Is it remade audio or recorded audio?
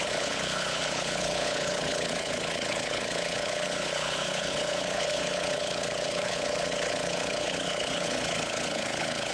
remade